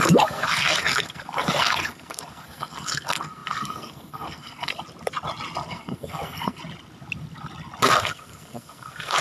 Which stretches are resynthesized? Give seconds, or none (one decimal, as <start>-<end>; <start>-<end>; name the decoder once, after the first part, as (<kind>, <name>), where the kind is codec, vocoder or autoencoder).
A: 0.0-4.7 (codec, SNAC); 5.7-6.6; 7.8-9.2